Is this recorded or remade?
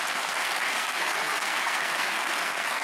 remade